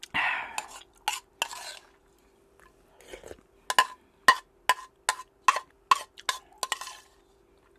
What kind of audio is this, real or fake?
real